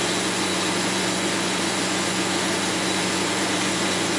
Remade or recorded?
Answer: remade